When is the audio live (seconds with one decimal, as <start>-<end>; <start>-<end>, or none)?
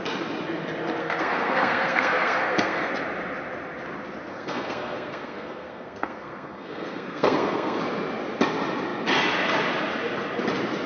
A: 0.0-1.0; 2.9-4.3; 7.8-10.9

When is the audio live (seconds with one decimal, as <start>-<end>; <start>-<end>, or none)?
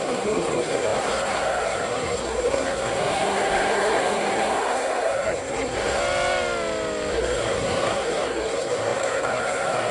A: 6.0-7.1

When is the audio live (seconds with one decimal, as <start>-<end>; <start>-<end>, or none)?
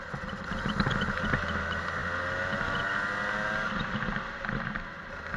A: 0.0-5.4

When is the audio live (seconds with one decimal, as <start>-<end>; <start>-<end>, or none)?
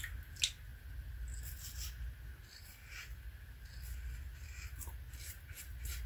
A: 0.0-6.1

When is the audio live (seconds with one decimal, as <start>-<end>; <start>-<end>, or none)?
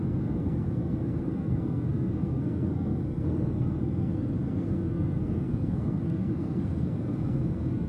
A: none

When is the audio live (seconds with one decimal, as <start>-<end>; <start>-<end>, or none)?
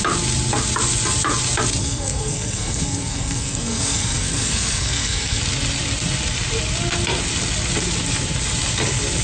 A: 0.0-1.8; 5.4-9.2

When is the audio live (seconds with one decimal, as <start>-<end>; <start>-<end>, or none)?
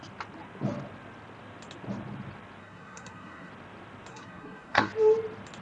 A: 0.0-2.6; 3.5-4.1; 4.9-5.6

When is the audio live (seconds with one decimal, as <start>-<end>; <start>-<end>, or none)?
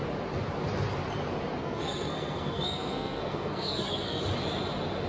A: 0.0-1.6; 4.2-5.1